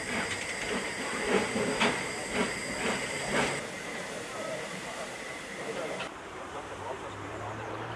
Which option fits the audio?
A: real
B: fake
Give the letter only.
B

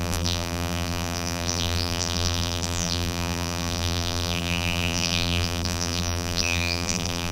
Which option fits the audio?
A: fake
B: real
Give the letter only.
A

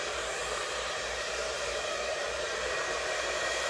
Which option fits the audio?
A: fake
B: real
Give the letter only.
A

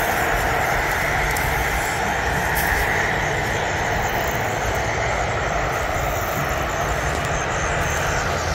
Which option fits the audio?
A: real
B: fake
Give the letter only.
A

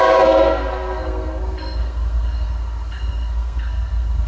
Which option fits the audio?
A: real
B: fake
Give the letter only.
B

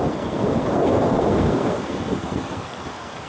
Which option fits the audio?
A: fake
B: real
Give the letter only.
A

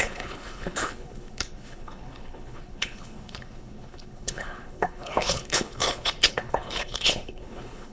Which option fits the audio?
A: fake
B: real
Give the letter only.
A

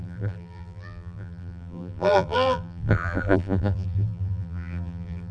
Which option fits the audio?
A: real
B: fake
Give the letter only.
B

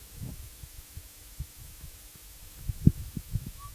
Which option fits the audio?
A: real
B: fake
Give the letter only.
B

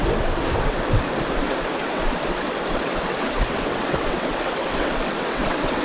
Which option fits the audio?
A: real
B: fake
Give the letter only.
B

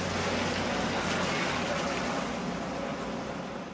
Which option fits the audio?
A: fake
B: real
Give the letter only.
B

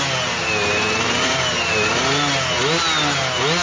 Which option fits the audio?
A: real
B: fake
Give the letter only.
A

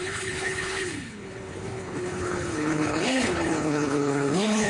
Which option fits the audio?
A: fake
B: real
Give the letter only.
A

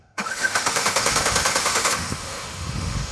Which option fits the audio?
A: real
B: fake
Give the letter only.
B